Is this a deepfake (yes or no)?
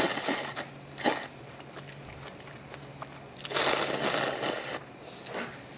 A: no